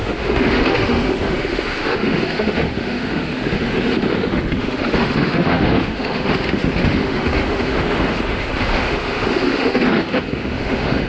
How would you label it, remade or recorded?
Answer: remade